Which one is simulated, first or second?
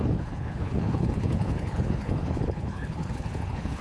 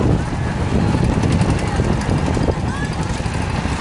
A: first